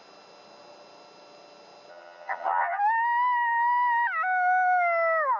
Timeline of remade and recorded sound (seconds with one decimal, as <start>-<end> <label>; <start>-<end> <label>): 0.0-1.9 recorded; 1.9-2.8 remade; 2.8-5.4 recorded